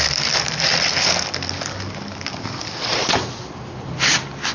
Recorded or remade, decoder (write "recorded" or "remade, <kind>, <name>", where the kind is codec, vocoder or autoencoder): recorded